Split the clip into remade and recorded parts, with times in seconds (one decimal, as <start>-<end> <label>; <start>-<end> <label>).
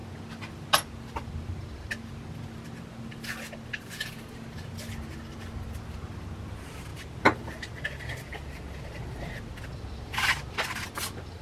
0.0-6.9 recorded; 6.9-9.4 remade; 9.4-11.4 recorded